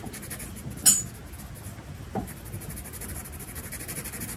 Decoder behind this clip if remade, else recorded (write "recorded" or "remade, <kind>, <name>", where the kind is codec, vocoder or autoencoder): recorded